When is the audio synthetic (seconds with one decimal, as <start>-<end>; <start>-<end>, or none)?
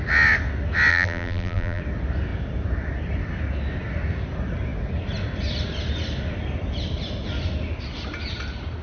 0.9-1.8